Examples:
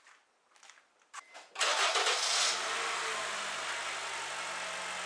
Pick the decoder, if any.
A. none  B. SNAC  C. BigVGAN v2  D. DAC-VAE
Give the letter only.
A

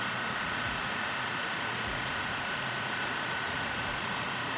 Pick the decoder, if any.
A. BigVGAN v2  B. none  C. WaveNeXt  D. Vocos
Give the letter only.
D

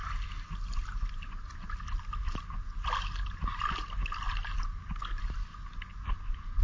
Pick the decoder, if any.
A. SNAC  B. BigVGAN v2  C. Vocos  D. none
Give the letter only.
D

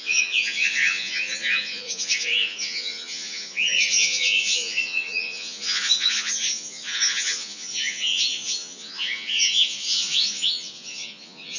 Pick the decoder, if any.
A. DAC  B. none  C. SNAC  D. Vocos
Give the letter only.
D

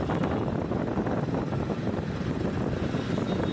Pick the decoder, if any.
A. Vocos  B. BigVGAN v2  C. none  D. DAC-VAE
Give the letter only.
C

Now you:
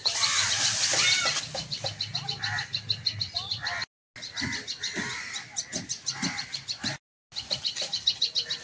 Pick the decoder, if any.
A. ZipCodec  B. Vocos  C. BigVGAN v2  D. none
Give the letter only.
D